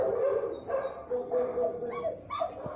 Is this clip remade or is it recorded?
recorded